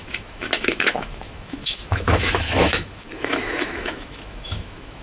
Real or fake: fake